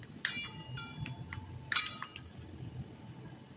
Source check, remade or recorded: recorded